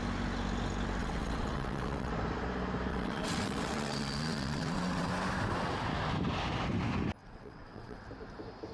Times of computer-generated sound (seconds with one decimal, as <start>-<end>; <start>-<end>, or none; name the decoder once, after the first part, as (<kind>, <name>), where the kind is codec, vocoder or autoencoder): 1.0-2.1 (vocoder, WaveNeXt); 2.9-5.1; 7.2-8.0